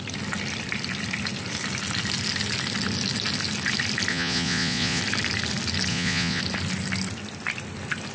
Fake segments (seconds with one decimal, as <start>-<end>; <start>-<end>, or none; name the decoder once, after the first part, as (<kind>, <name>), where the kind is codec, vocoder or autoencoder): 4.1-5.0 (vocoder, Vocos); 5.9-6.4